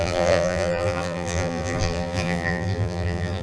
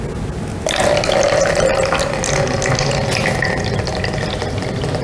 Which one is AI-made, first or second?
first